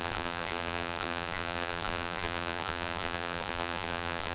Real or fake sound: fake